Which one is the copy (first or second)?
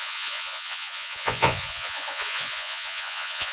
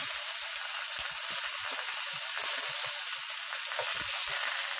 first